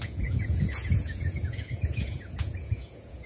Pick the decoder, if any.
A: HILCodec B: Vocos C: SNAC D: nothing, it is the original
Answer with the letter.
B